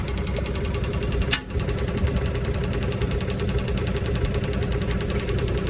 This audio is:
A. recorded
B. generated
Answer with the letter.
A